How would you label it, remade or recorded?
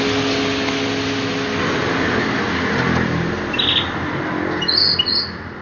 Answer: recorded